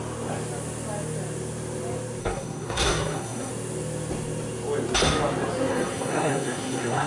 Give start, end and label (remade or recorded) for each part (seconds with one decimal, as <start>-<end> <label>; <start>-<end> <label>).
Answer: 0.0-2.2 recorded; 2.2-3.5 remade; 3.5-5.7 recorded; 5.7-7.1 remade